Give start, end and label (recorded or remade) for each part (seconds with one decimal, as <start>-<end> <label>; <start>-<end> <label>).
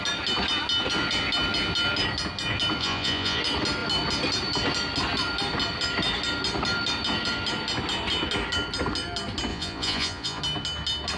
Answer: 0.0-2.8 recorded; 2.8-3.4 remade; 3.4-9.5 recorded; 9.5-10.4 remade; 10.4-11.2 recorded